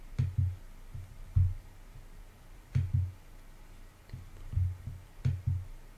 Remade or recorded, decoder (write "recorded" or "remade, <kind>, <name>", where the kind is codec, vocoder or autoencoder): recorded